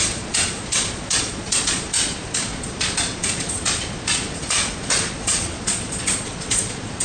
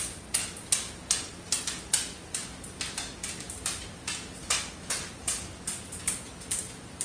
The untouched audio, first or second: second